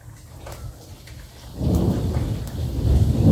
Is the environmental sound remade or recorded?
recorded